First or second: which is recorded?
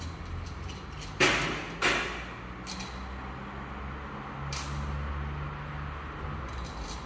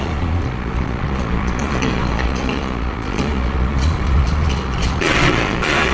first